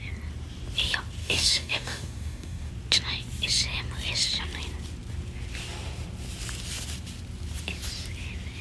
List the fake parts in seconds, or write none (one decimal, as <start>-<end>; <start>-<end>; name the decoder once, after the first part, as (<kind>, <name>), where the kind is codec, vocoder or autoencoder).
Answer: 1.2-2.7 (codec, DAC)